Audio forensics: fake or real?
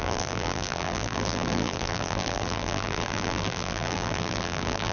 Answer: fake